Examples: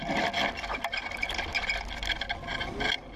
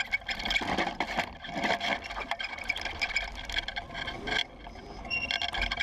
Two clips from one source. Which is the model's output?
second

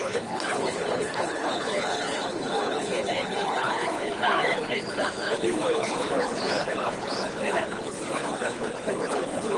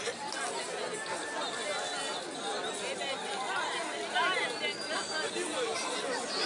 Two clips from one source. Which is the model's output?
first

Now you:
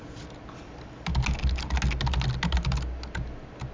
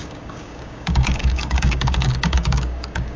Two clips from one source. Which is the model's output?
second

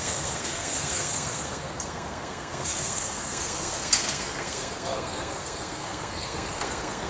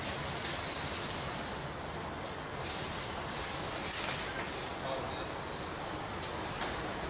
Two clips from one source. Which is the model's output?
first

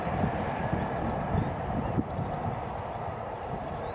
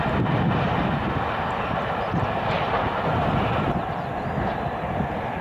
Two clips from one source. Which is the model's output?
first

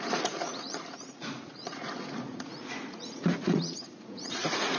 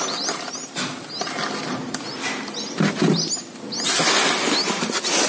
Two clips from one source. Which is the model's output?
first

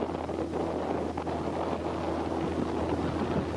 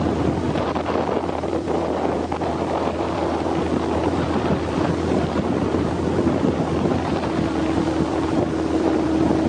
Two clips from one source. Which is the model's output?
second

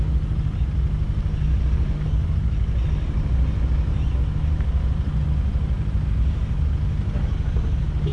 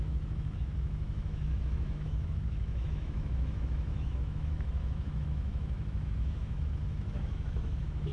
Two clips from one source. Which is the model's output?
second